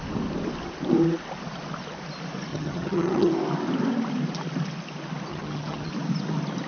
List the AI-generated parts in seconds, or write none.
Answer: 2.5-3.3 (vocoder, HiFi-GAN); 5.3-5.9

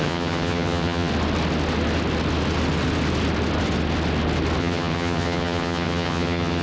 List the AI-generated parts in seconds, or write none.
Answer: 0.0-1.1 (vocoder, HiFi-GAN); 4.6-6.6

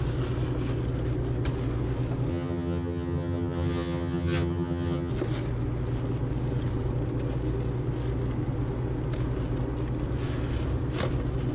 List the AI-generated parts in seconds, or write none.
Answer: 2.3-5.1 (vocoder, HiFi-GAN)

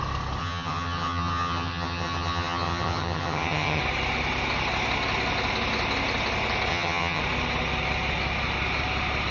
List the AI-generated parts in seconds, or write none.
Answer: 0.4-3.8 (vocoder, HiFi-GAN); 6.7-7.2